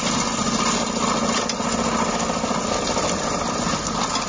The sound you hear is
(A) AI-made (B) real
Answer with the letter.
B